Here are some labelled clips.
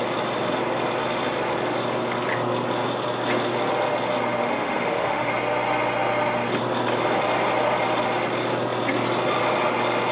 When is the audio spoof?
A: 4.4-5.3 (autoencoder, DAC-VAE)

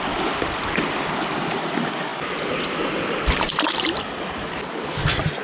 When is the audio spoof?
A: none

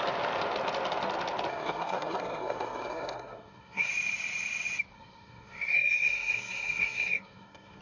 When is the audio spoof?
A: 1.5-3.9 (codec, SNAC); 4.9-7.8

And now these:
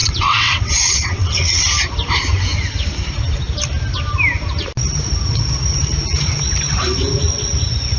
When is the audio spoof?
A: 0.0-1.6 (vocoder, WaveNeXt)

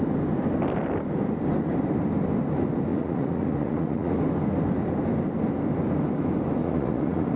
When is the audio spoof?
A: 2.9-4.1 (vocoder, Vocos); 6.6-7.4

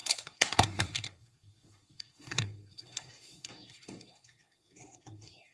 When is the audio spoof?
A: 0.0-5.5 (codec, SNAC)